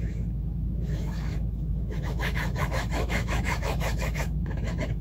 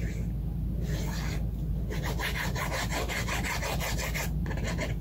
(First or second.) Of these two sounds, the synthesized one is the first